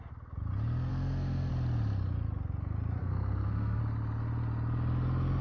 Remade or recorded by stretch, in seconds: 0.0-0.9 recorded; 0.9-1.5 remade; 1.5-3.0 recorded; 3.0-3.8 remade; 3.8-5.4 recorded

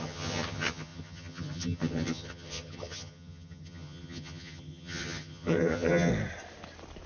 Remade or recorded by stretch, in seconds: 0.0-6.1 remade; 6.1-7.1 recorded

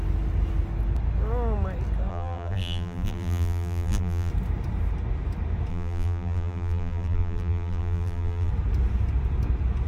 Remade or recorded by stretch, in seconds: 0.0-2.1 recorded; 2.1-4.3 remade; 4.3-5.7 recorded; 5.7-8.5 remade; 8.5-9.9 recorded

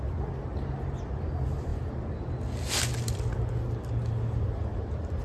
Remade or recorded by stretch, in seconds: 0.0-5.2 recorded